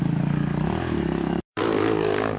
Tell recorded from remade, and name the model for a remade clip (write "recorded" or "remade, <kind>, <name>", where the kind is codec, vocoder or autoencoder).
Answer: remade, codec, DAC